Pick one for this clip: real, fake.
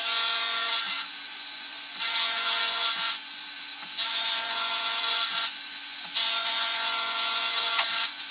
fake